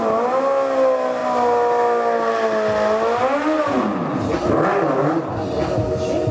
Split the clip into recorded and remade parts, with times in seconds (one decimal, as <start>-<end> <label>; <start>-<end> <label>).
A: 0.0-6.3 recorded